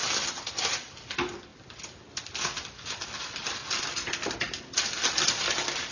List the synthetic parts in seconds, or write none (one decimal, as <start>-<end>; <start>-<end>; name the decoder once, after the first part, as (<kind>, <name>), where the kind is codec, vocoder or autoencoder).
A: none